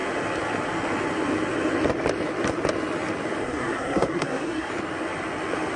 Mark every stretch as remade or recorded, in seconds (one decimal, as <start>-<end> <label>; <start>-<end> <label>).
0.0-3.4 recorded; 3.4-4.7 remade; 4.7-5.8 recorded